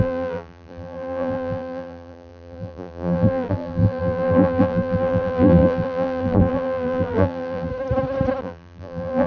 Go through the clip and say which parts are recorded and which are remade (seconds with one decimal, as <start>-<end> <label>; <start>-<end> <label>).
0.0-7.7 remade; 7.7-8.4 recorded; 8.4-9.3 remade